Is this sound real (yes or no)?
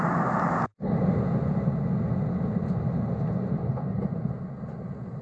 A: yes